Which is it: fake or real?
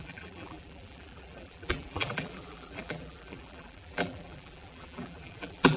fake